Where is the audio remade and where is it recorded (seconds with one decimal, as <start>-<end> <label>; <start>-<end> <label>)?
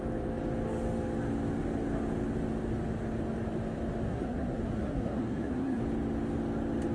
0.0-4.1 recorded; 4.1-5.8 remade; 5.8-6.9 recorded